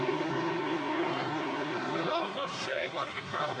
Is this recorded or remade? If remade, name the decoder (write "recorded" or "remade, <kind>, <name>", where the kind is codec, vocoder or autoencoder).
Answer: remade, codec, SNAC